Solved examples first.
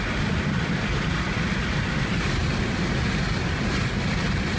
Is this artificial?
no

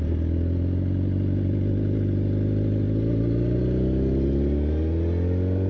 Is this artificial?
no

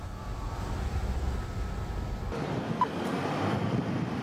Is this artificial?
no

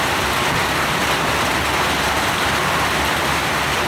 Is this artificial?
no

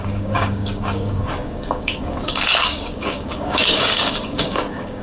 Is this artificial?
yes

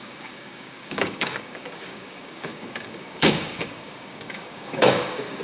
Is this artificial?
yes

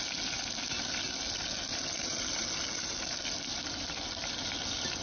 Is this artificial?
no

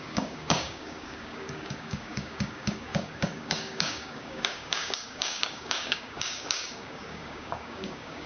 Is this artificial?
yes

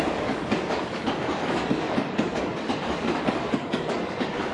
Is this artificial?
yes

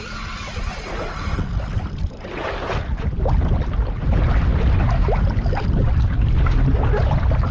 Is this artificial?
no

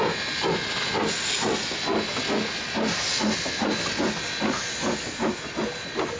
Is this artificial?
no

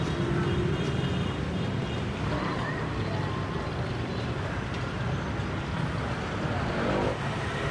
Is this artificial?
no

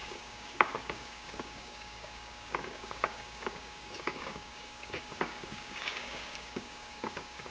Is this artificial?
yes